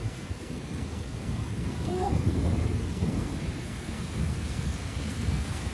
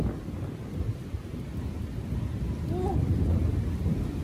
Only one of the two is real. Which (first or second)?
second